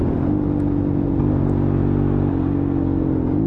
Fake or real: real